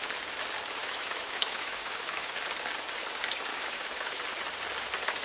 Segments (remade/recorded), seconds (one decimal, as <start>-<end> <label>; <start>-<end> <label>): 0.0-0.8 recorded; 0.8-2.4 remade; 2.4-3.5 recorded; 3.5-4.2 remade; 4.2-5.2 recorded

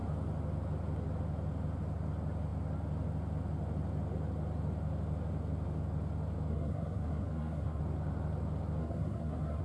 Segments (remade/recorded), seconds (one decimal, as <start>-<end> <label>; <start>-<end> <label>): 0.0-6.5 recorded; 6.5-7.8 remade; 7.8-8.8 recorded; 8.8-9.6 remade

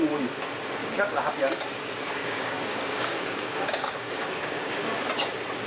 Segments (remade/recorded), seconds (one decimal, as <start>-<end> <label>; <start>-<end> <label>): 0.0-0.8 recorded; 0.8-1.3 remade; 1.3-2.2 recorded; 2.2-4.7 remade; 4.7-5.7 recorded

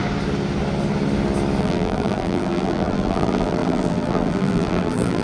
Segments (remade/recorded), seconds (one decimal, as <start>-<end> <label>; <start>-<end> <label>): 0.0-1.6 recorded; 1.6-5.2 remade

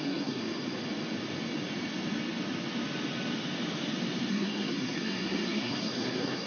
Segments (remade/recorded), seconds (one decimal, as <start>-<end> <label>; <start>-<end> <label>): 0.0-0.4 remade; 0.4-4.3 recorded; 4.3-6.5 remade

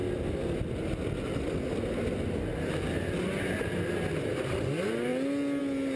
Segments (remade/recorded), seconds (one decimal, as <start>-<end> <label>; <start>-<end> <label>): 0.0-6.0 recorded

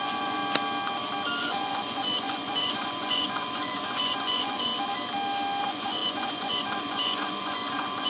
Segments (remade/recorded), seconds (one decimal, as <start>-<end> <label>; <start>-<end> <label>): 0.0-0.4 remade; 0.4-1.4 recorded; 1.4-4.7 remade; 4.7-5.6 recorded; 5.6-8.1 remade

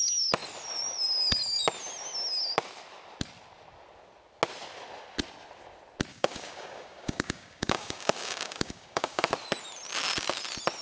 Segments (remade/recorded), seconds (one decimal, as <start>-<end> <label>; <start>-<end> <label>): 0.0-6.1 recorded; 6.1-9.3 remade; 9.3-10.8 recorded